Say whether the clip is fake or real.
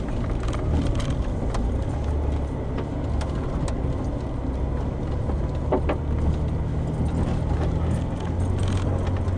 real